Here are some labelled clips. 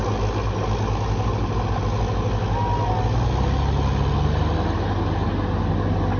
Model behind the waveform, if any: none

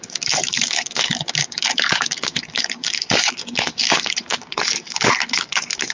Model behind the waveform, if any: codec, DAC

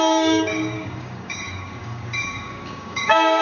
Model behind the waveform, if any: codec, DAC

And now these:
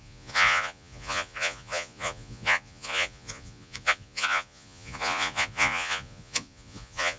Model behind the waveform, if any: vocoder, Vocos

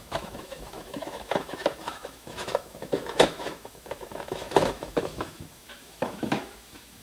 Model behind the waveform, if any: autoencoder, DAC-VAE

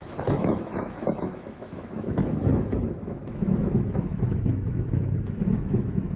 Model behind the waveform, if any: autoencoder, DAC-VAE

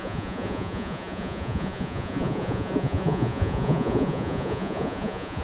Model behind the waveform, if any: vocoder, Vocos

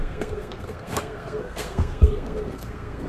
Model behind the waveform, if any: codec, SNAC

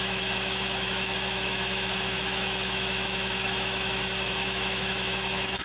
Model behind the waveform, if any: autoencoder, DAC-VAE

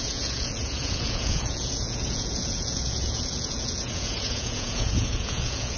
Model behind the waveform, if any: vocoder, Vocos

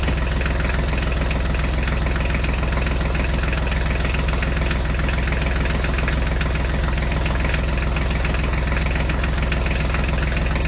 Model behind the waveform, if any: none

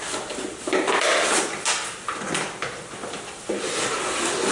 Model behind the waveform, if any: none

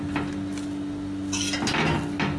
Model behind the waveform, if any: none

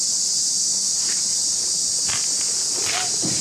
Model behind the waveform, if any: none